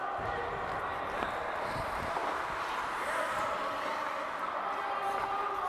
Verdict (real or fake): real